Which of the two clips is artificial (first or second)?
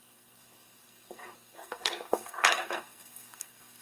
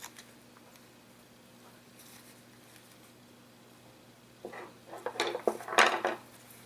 first